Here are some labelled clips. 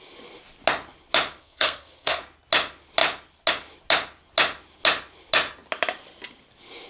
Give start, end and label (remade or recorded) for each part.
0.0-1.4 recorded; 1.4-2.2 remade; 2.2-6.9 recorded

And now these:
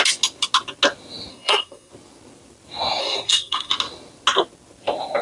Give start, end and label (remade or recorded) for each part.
0.0-1.3 recorded; 1.3-1.9 remade; 1.9-3.0 recorded; 3.0-3.7 remade; 3.7-5.2 recorded

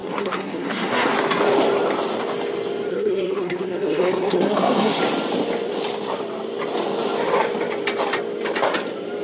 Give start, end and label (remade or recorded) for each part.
0.0-1.1 remade; 1.1-2.9 recorded; 2.9-5.0 remade; 5.0-9.2 recorded